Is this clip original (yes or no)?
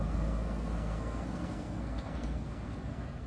no